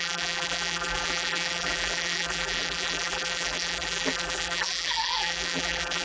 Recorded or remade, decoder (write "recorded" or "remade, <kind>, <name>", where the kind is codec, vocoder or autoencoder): remade, vocoder, BigVGAN v2